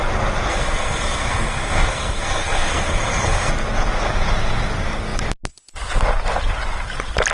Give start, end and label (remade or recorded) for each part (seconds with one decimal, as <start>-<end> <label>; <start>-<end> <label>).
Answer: 0.0-0.5 recorded; 0.5-3.5 remade; 3.5-7.3 recorded